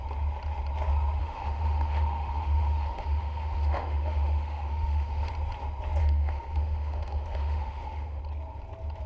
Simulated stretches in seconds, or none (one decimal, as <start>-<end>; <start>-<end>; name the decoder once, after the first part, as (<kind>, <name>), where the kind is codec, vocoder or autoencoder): 1.2-5.3 (autoencoder, DAC-VAE); 6.0-8.2